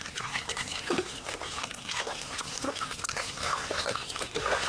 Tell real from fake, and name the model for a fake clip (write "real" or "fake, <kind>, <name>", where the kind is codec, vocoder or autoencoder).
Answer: fake, codec, SNAC